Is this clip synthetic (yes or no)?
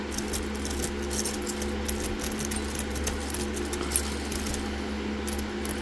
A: no